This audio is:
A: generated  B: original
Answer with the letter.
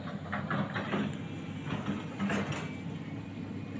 B